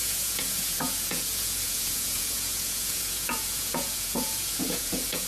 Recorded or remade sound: remade